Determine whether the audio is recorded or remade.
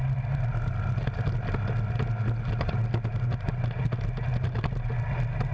recorded